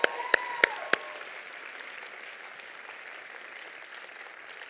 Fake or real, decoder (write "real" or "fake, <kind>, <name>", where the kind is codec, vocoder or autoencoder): real